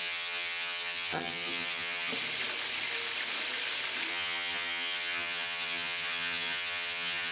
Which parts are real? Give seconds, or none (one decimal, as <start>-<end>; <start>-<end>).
2.1-4.1